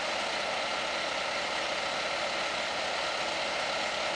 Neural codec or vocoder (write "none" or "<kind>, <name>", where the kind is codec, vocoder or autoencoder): none